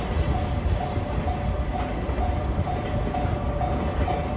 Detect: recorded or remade recorded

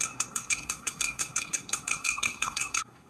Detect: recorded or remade remade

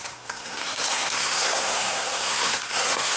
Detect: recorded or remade remade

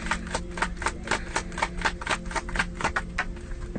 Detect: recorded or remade recorded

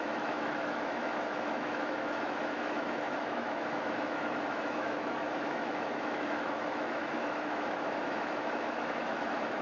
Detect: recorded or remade remade